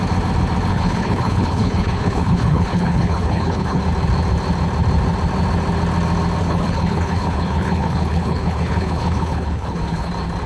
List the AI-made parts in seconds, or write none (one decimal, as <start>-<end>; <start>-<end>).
0.7-3.8; 6.4-10.1